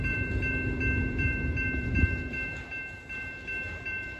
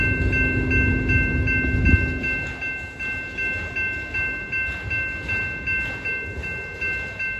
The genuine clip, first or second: second